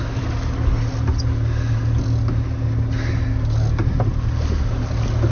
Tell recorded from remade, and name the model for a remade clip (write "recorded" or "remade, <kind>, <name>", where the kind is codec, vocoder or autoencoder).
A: recorded